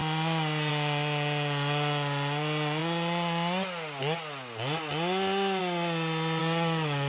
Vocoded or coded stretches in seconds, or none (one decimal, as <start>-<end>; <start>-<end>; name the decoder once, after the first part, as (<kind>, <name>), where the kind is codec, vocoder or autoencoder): 6.4-7.1 (codec, DAC)